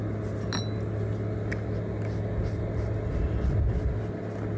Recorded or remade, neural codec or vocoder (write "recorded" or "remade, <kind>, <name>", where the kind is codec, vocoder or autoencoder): recorded